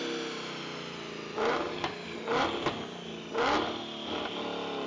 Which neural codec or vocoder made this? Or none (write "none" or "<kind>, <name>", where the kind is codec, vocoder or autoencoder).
none